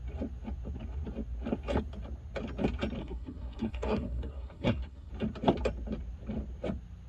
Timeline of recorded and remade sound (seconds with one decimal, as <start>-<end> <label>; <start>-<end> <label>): 0.0-3.0 recorded; 3.0-5.1 remade; 5.1-7.1 recorded